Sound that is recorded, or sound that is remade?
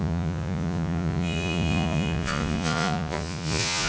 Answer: remade